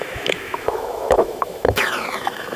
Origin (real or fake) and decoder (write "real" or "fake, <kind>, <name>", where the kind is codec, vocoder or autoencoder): fake, autoencoder, DAC-VAE